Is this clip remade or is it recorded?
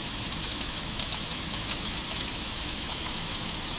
remade